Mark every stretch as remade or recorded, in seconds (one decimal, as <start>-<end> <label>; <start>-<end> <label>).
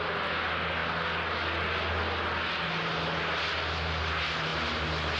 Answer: 0.0-5.2 recorded